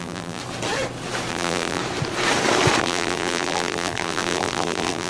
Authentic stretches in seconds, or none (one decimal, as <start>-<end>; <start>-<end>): 0.4-1.3; 1.8-2.8